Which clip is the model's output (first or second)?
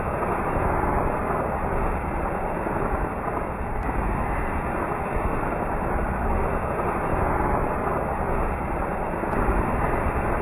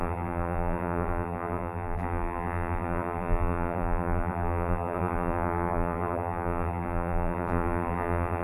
second